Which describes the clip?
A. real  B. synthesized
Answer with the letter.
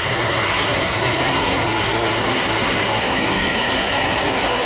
B